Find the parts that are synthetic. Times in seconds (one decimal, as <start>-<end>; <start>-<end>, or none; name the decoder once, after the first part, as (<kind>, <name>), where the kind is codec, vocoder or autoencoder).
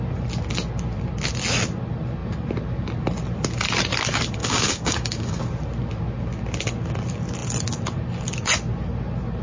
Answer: 4.4-5.4 (codec, DAC)